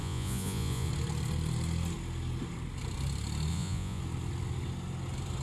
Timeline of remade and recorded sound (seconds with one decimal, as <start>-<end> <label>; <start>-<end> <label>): 0.0-0.9 remade; 0.9-3.5 recorded; 3.5-4.0 remade; 4.0-5.4 recorded